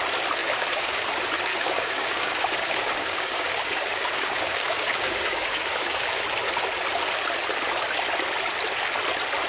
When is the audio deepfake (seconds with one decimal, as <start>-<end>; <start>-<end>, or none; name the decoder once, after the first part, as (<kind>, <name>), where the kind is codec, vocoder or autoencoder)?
0.4-1.0 (codec, DAC); 1.5-6.2